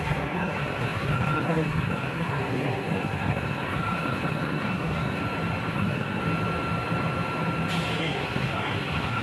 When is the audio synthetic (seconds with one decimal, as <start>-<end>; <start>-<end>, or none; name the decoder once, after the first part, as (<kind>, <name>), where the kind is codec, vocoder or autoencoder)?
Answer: 0.0-5.2 (codec, SNAC); 5.7-6.2; 8.0-9.2